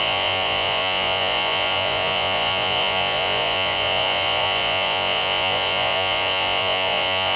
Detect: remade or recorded remade